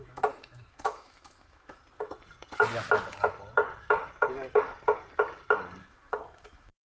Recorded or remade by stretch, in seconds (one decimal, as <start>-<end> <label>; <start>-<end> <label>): 0.0-1.8 remade; 1.8-5.8 recorded; 5.8-6.8 remade